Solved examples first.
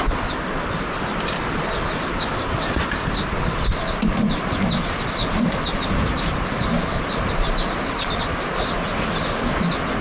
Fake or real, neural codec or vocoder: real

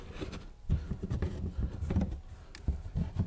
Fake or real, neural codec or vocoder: real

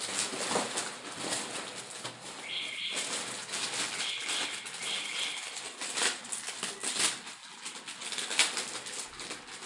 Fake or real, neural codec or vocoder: real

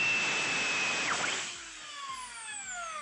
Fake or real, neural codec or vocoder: real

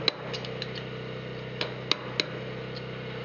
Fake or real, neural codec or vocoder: real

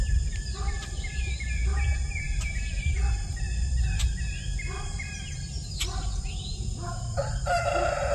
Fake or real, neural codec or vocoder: fake, vocoder, BigVGAN v2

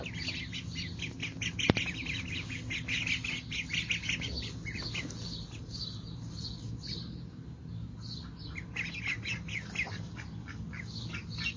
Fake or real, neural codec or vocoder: real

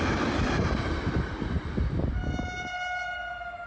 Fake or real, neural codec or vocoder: real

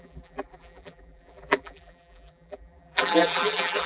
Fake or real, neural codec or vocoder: fake, vocoder, BigVGAN v2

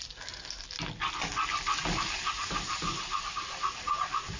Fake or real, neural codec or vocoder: real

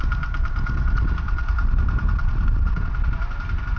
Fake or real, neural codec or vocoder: real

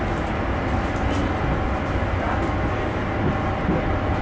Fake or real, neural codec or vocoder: real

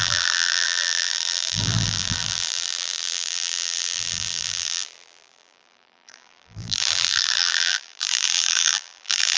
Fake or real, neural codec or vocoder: fake, vocoder, BigVGAN v2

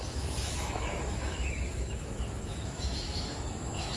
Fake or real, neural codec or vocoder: fake, autoencoder, DAC-VAE